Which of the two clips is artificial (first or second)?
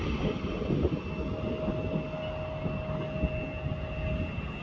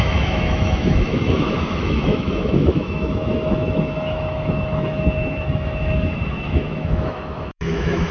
second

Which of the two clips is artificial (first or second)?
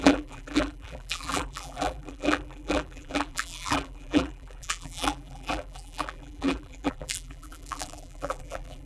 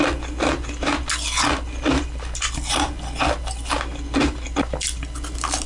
first